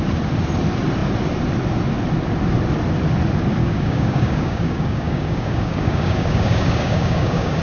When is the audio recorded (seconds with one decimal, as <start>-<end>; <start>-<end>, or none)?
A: 0.0-3.6